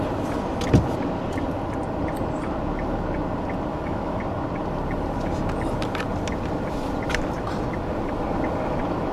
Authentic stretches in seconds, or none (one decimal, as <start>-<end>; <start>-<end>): 0.0-3.7; 4.2-9.1